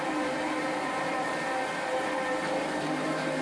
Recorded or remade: remade